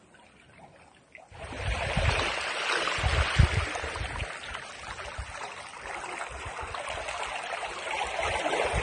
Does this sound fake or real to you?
real